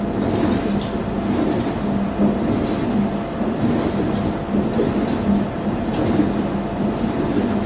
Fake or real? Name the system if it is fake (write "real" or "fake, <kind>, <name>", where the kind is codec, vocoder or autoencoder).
real